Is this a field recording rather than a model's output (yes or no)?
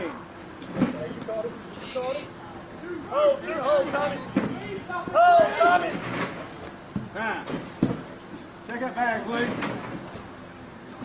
yes